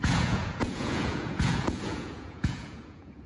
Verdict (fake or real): fake